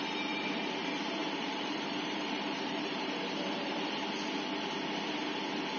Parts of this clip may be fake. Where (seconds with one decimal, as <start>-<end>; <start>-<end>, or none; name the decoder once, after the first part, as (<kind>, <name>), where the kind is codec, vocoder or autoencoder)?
1.2-3.9 (vocoder, BigVGAN v2)